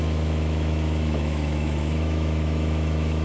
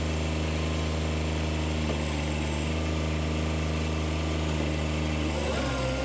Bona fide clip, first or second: second